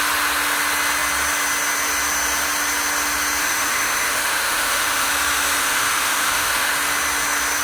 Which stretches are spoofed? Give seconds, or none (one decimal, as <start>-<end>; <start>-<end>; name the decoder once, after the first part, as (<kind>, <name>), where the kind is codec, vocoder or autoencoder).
3.4-5.1 (autoencoder, DAC-VAE); 5.6-6.7